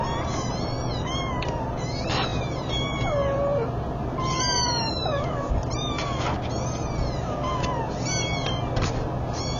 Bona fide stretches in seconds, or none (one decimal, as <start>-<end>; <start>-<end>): 0.0-9.6